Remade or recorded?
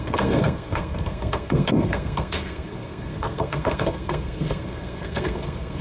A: remade